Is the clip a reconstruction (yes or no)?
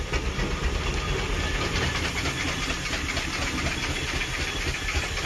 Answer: no